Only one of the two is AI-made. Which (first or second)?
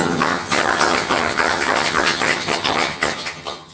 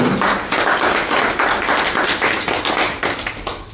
first